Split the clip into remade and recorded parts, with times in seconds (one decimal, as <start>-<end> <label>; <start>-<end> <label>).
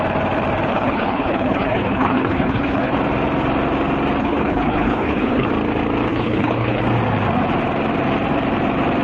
0.0-0.7 recorded; 0.7-3.0 remade; 3.0-4.2 recorded; 4.2-5.5 remade; 5.5-6.1 recorded; 6.1-6.8 remade; 6.8-9.0 recorded